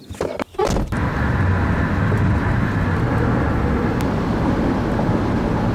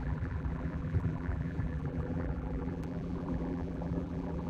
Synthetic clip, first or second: second